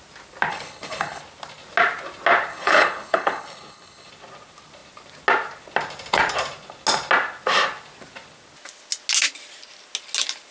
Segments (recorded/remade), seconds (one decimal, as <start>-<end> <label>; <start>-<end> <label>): 0.0-0.5 recorded; 0.5-1.2 remade; 1.2-2.5 recorded; 2.5-4.1 remade; 4.1-10.5 recorded